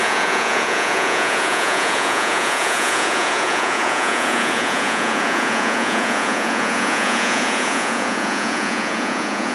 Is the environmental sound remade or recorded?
remade